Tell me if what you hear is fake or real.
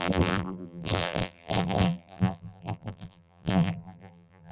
fake